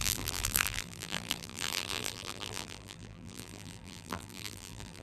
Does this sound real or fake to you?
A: fake